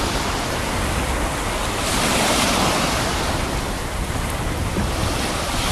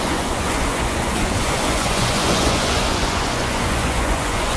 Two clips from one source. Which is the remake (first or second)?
second